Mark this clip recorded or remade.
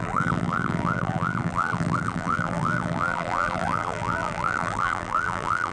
remade